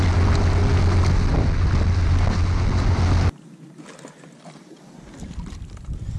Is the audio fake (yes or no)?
no